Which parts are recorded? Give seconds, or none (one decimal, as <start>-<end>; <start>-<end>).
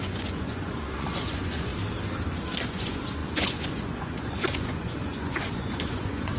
1.7-2.7